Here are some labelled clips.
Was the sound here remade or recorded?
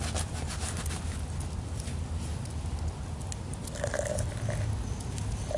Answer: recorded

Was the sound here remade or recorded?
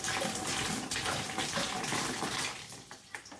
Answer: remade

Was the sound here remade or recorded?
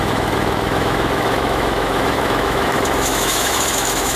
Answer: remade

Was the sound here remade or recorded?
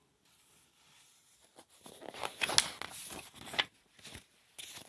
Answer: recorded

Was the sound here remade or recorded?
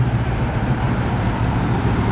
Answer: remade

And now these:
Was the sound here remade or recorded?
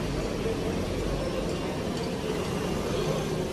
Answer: recorded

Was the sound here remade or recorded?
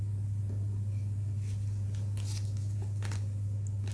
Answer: recorded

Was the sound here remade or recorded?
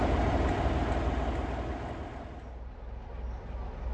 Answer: recorded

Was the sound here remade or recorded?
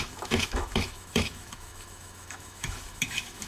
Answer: remade